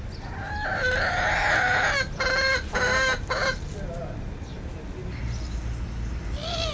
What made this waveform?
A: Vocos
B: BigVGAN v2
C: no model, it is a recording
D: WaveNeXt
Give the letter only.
C